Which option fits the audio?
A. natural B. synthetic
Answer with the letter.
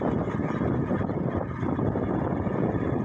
B